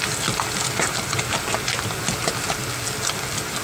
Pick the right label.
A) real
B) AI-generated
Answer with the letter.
A